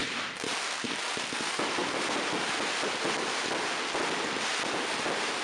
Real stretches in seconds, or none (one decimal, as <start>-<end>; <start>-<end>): 0.5-5.4